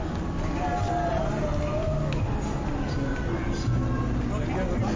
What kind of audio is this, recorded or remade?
recorded